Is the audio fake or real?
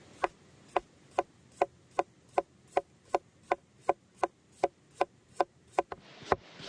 real